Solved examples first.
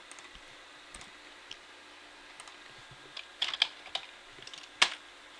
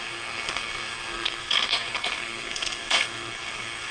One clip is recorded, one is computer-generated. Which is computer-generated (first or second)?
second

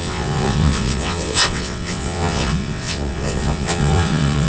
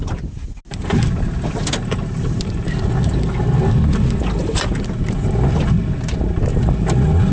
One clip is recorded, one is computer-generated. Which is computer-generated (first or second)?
first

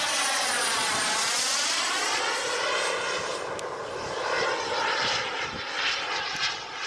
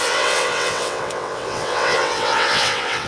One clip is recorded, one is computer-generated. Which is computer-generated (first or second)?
second